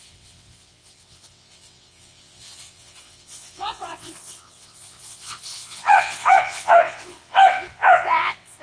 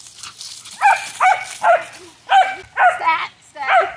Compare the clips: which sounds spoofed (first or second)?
first